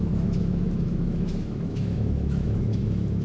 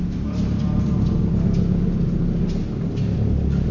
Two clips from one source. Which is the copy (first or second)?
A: first